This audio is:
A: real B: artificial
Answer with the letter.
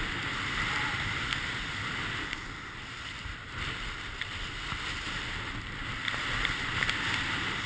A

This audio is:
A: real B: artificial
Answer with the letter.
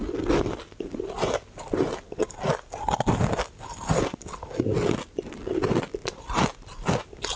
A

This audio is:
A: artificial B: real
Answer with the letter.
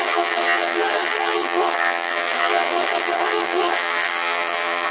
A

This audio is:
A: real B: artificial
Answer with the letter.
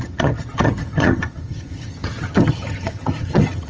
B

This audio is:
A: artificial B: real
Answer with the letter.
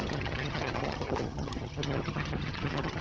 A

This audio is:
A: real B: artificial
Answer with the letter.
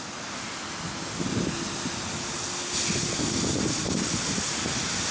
A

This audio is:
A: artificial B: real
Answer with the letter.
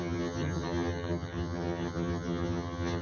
A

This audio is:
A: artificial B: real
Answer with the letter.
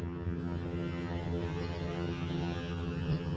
A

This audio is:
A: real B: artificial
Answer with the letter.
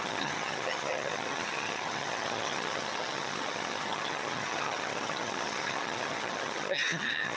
B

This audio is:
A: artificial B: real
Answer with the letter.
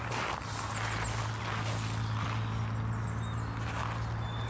B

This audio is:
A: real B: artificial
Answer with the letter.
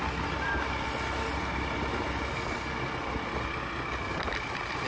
A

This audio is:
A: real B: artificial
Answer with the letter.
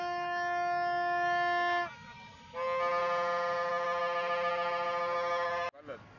A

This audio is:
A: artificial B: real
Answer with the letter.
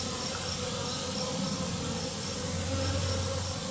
B